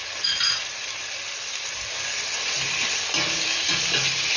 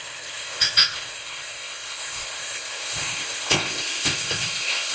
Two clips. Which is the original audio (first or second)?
first